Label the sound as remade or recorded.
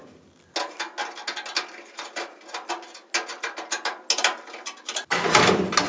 recorded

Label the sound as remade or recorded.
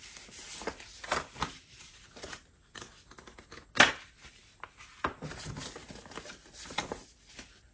recorded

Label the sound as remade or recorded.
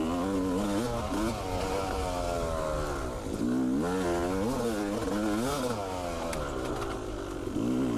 recorded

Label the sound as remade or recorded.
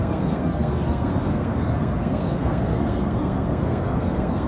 remade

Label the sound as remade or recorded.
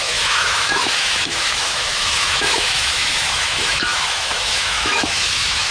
remade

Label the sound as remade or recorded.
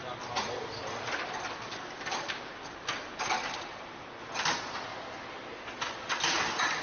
recorded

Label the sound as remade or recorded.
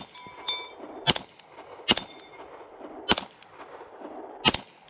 recorded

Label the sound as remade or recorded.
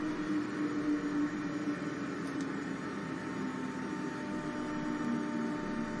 recorded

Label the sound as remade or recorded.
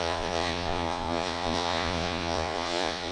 remade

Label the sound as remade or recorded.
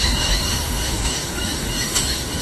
remade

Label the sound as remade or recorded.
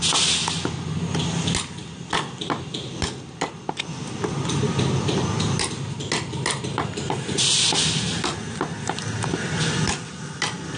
recorded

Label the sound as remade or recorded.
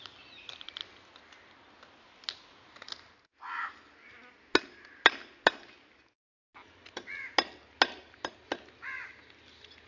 recorded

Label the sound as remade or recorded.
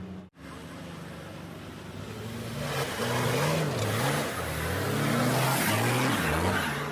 recorded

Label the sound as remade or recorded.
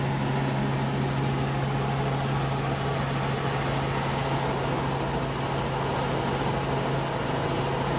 recorded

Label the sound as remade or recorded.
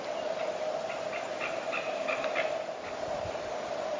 recorded